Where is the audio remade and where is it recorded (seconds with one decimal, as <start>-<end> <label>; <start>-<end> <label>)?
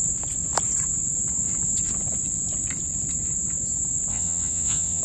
0.0-4.1 recorded; 4.1-5.0 remade